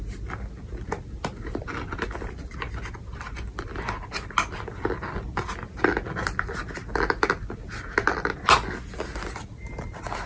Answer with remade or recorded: recorded